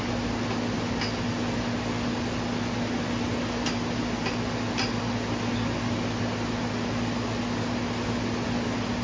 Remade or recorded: recorded